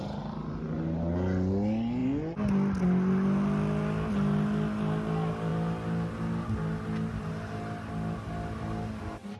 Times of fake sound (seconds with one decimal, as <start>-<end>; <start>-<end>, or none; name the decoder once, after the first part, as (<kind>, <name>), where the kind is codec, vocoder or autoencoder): none